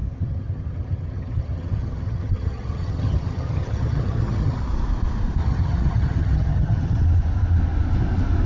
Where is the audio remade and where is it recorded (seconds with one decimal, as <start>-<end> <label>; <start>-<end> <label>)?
0.0-4.6 remade; 4.6-5.4 recorded; 5.4-7.0 remade; 7.0-8.5 recorded